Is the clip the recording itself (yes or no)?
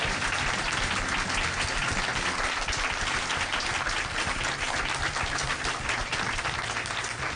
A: yes